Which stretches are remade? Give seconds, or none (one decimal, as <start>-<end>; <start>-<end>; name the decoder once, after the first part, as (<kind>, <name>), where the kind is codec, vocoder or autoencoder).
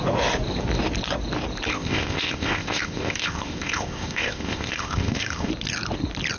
1.7-5.5 (codec, ZipCodec)